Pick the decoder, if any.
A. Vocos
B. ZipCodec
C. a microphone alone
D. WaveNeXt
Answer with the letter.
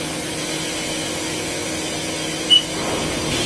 C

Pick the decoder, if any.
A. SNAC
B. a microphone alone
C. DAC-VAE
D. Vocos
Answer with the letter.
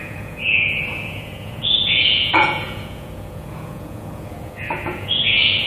D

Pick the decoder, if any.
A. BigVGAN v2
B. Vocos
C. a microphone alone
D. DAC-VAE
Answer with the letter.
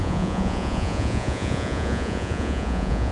B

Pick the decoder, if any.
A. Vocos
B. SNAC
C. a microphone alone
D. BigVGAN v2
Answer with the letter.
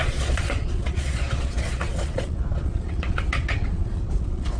A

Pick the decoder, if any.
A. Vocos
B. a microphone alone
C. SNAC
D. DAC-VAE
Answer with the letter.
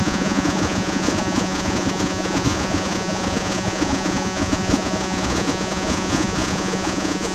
A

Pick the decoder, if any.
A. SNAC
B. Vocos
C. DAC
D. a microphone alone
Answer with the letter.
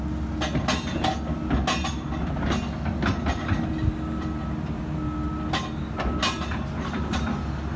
D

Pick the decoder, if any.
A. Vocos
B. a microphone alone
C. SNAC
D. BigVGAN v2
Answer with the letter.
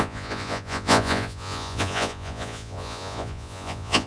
A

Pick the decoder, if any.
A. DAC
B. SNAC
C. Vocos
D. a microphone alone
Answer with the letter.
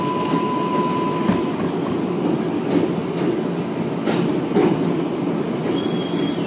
D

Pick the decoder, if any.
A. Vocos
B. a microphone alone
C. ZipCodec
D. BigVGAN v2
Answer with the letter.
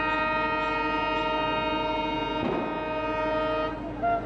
B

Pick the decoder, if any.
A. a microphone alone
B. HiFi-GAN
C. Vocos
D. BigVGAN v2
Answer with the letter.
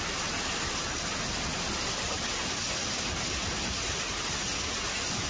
A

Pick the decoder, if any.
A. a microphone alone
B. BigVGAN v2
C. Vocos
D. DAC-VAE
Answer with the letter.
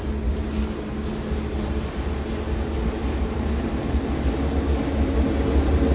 A